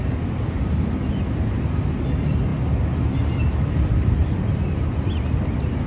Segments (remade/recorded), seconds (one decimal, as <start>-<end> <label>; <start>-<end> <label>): 0.0-5.9 recorded